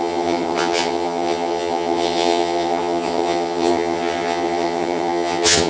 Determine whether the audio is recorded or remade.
remade